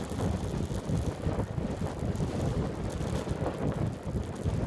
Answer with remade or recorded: recorded